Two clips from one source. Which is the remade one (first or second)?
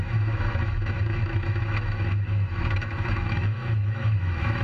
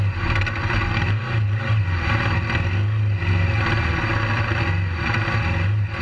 first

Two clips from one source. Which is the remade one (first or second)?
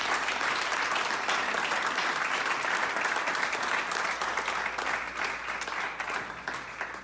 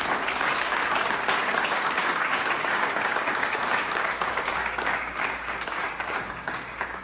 second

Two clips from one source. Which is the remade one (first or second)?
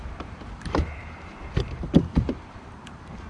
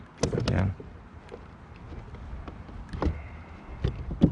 first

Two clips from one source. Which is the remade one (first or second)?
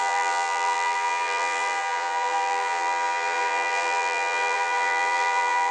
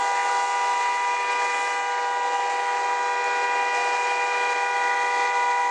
first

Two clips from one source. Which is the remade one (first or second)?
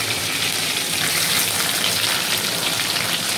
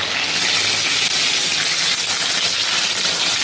first